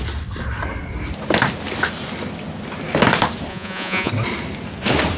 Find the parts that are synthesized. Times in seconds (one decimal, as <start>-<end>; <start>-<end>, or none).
3.5-4.1